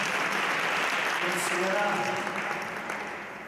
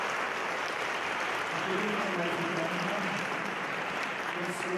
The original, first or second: first